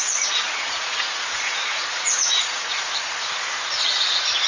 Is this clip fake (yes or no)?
yes